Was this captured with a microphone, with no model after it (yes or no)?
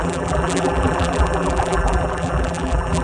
no